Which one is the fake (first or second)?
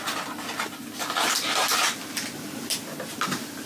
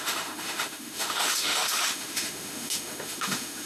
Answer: second